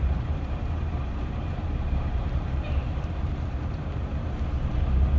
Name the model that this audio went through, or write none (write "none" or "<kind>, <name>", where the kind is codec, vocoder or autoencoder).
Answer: vocoder, BigVGAN v2